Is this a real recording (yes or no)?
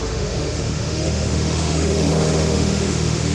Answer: no